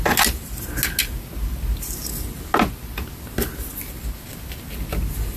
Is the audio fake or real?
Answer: real